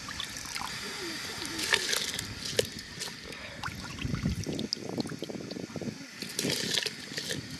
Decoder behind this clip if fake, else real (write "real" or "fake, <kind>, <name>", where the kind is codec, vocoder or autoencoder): real